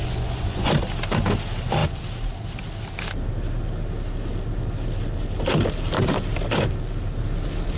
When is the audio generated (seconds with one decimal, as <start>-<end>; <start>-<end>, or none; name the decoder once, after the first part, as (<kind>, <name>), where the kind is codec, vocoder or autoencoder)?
0.0-0.7 (vocoder, Vocos)